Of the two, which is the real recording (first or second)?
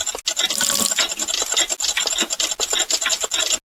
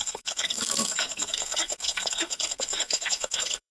first